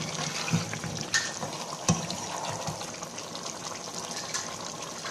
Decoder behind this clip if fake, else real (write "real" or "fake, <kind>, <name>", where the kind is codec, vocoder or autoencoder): real